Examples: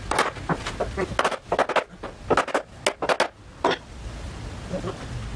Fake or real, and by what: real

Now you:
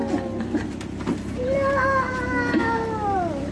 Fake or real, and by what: real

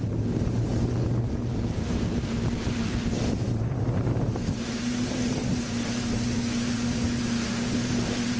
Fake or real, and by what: fake, vocoder, BigVGAN v2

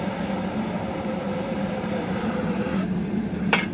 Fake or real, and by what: fake, vocoder, BigVGAN v2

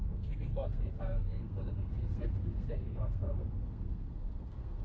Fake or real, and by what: fake, codec, SNAC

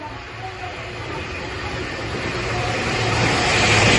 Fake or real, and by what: real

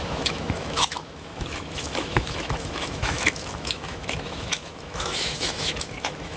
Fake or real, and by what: fake, autoencoder, DAC-VAE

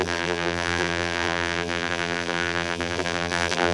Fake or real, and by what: fake, vocoder, BigVGAN v2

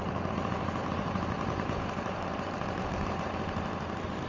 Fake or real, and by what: fake, vocoder, BigVGAN v2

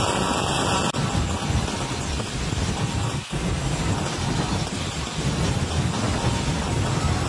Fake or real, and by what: real